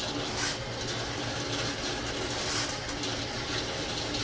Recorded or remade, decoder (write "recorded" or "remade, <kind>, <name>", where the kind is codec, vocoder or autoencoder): recorded